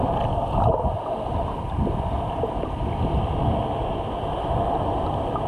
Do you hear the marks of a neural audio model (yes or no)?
no